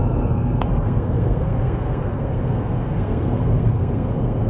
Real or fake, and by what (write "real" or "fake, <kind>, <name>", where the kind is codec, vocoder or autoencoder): fake, codec, SNAC